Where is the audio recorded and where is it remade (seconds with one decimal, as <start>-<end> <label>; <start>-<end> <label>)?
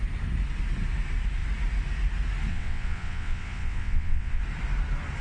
0.0-2.5 recorded; 2.5-4.4 remade; 4.4-5.2 recorded